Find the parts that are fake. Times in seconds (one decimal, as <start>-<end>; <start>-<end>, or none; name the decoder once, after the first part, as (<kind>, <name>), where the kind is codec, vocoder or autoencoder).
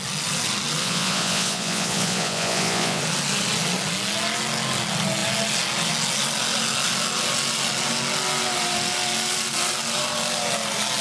0.8-3.0 (vocoder, Vocos)